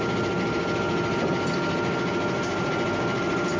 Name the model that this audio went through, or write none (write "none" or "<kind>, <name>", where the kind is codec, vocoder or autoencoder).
none